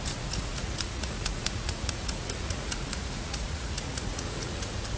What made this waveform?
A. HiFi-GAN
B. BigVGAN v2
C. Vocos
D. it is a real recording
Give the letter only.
C